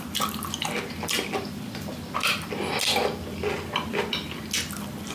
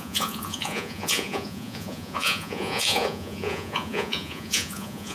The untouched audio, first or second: first